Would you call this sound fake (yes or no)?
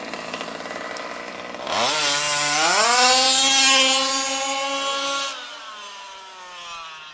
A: no